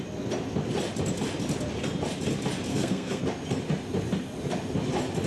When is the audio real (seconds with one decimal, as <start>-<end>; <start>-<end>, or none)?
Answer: 0.0-2.7; 3.2-5.3